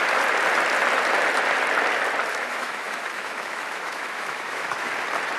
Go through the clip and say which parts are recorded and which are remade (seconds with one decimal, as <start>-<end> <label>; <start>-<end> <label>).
0.0-2.3 recorded; 2.3-4.9 remade; 4.9-5.4 recorded